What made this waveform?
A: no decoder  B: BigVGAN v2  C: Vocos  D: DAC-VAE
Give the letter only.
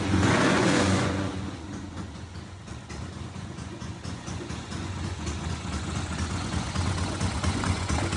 C